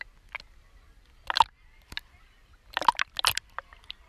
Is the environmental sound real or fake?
real